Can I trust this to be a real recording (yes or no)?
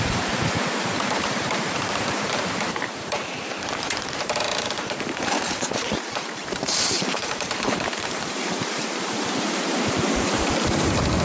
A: no